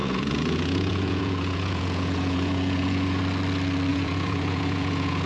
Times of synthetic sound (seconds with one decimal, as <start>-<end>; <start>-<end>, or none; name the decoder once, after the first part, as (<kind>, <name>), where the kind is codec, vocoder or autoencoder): 0.0-3.2 (vocoder, Vocos); 3.9-5.3

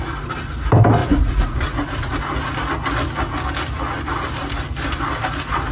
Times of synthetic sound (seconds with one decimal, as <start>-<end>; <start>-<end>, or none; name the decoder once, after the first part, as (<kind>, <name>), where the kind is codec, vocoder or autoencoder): 1.0-2.2 (vocoder, Vocos)